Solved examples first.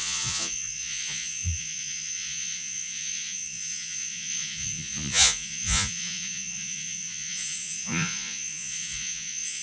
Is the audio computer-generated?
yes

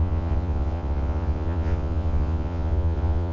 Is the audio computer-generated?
yes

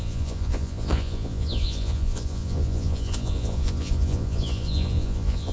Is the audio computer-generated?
yes